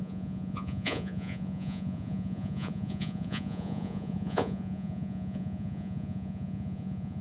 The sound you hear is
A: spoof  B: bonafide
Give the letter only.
A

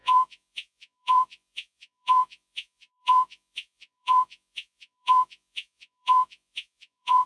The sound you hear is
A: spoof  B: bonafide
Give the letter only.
A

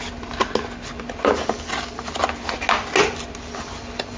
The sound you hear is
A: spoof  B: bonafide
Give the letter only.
B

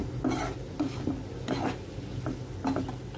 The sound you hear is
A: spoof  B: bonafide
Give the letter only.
B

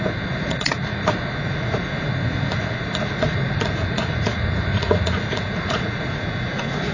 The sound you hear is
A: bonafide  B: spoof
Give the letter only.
B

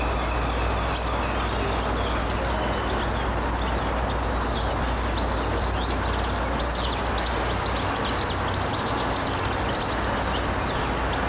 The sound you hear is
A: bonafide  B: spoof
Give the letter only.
A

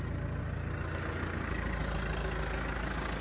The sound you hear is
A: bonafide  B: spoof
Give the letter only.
A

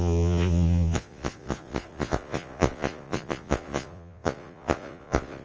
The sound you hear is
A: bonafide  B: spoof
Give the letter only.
B